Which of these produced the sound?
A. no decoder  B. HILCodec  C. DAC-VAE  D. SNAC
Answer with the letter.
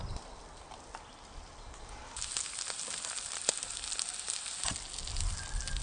A